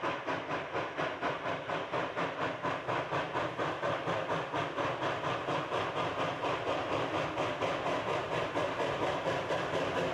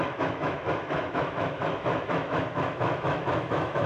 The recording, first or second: first